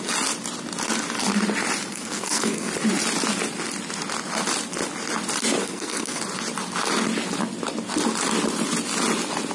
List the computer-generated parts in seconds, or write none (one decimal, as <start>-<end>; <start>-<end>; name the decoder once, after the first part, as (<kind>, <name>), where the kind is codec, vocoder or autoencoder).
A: 1.9-2.7 (codec, SNAC); 5.6-6.2